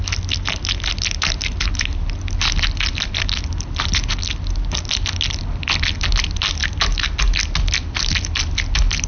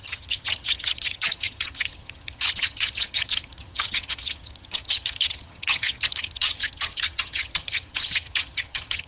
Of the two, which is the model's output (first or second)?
second